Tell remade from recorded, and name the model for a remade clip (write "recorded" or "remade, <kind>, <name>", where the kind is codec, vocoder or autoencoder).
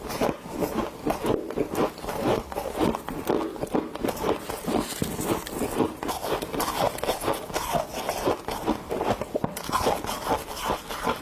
recorded